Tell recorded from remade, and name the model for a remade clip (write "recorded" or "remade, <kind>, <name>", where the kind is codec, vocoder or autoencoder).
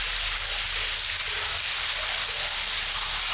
recorded